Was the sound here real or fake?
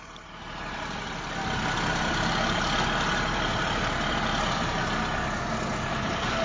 real